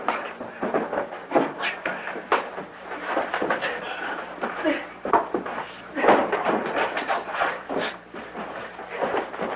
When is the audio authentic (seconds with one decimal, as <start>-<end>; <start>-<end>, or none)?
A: 0.0-2.3; 3.3-6.2; 8.2-9.6